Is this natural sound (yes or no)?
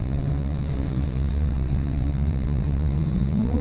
no